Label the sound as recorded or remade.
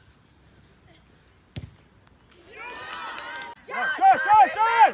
recorded